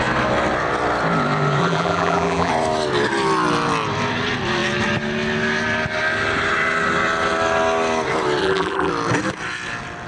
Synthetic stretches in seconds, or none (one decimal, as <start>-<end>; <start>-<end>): 1.6-2.5; 8.4-8.9